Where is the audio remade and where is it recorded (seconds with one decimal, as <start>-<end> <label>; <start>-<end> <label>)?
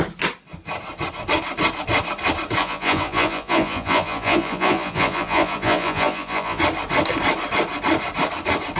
0.0-2.6 recorded; 2.6-6.6 remade; 6.6-8.8 recorded